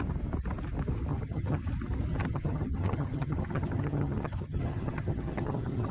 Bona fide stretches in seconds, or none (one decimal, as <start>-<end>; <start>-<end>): 0.0-1.1; 1.7-2.1